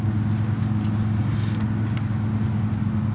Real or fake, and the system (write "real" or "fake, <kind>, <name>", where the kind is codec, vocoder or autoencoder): real